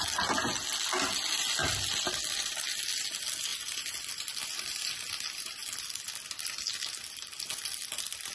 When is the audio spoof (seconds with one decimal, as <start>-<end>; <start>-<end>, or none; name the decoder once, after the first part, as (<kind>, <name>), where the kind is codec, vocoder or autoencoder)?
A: none